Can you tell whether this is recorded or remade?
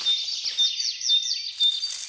recorded